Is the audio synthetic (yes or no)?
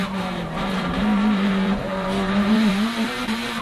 yes